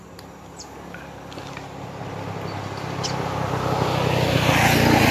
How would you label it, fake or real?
real